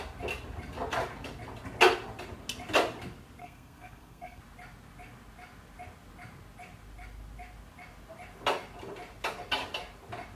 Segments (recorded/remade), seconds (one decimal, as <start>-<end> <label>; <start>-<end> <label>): 0.0-3.4 recorded; 3.4-4.4 remade; 4.4-10.3 recorded